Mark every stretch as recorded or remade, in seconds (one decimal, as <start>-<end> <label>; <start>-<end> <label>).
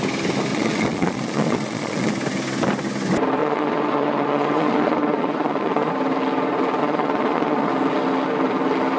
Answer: 0.0-0.5 recorded; 0.5-2.1 remade; 2.1-3.4 recorded; 3.4-5.9 remade; 5.9-6.8 recorded; 6.8-7.7 remade; 7.7-9.0 recorded